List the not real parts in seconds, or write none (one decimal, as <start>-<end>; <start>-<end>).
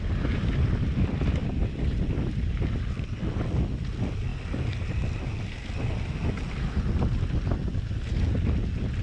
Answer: none